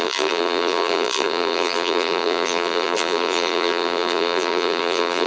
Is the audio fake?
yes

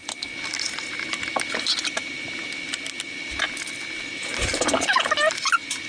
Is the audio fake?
no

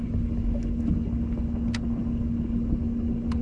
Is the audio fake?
no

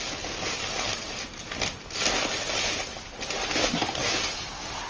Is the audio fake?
no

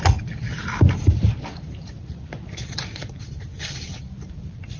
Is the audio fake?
yes